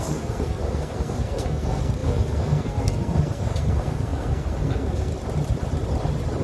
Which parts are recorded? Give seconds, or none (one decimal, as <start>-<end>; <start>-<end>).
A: 5.1-6.4